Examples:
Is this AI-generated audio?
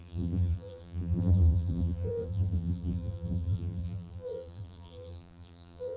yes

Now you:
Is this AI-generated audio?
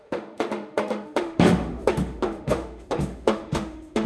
yes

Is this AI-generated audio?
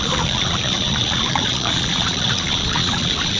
yes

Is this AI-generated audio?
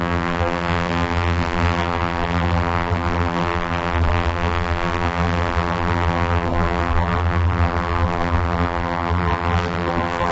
yes